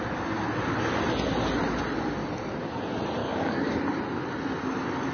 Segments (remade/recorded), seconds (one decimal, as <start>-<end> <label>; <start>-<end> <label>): 0.0-3.2 recorded; 3.2-3.8 remade; 3.8-5.1 recorded